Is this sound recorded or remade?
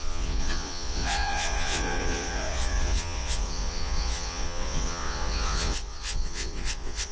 remade